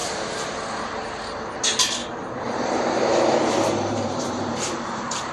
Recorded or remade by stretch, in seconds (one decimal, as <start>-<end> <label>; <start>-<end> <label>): 0.0-0.5 remade; 0.5-2.0 recorded; 2.0-5.3 remade